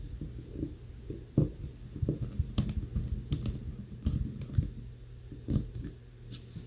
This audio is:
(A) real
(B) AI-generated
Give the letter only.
A